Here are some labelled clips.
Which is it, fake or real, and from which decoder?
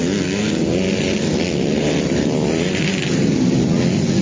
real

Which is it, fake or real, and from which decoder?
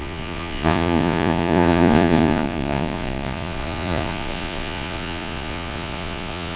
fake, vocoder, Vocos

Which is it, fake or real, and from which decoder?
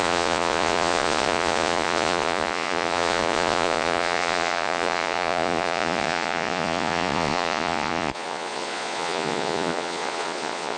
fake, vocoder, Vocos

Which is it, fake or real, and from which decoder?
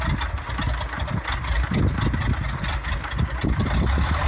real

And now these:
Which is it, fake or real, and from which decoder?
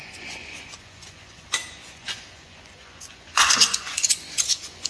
fake, vocoder, Vocos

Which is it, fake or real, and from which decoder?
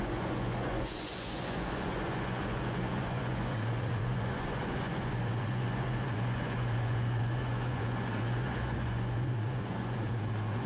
fake, vocoder, Vocos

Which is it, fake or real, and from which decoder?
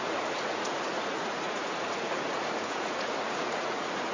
fake, vocoder, Vocos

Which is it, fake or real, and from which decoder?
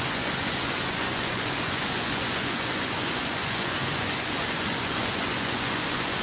fake, vocoder, Vocos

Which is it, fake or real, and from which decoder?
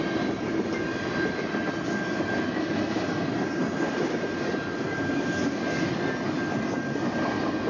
real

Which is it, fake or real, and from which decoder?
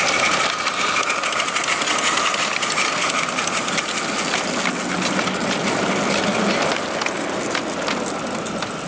real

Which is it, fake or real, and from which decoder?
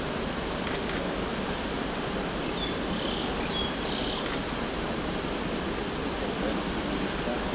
real